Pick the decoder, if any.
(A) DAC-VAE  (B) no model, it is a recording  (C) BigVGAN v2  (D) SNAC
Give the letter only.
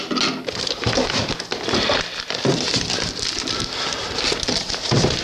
B